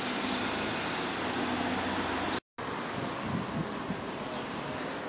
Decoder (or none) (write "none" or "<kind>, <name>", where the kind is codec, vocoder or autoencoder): none